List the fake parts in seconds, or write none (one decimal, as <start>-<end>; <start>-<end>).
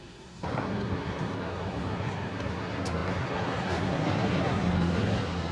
0.0-5.5